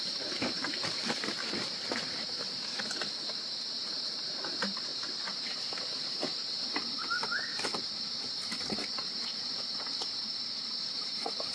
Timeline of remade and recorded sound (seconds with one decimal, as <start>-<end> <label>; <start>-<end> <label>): 0.0-11.5 remade